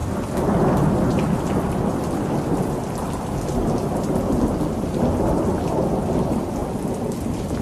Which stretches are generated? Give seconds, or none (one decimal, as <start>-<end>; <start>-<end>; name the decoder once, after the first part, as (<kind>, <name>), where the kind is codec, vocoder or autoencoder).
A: 0.0-1.5 (vocoder, BigVGAN v2); 6.6-7.6